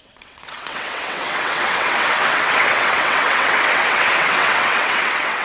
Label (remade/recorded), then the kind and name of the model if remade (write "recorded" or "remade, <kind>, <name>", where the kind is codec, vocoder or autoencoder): remade, vocoder, WaveNeXt